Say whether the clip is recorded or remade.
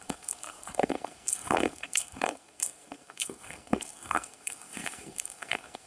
remade